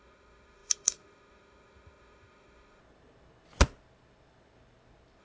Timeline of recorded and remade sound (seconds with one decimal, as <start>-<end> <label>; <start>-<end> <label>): 0.0-2.8 remade; 2.8-5.2 recorded